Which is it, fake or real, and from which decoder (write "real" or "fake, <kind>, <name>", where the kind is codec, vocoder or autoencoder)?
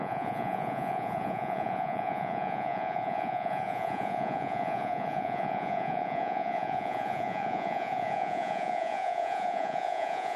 fake, vocoder, Vocos